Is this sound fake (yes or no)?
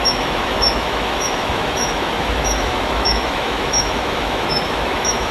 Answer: yes